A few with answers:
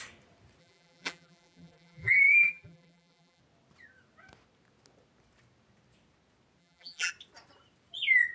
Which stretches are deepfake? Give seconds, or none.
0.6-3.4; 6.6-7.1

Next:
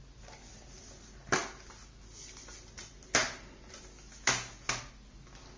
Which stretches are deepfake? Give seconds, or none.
none

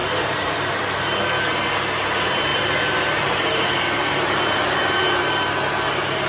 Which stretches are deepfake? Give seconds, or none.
0.0-1.2; 2.5-4.4